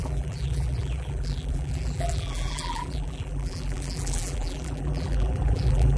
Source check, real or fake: fake